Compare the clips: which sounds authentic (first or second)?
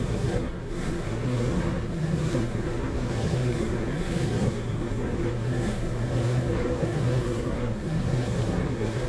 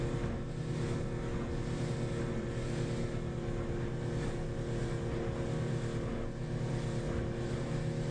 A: second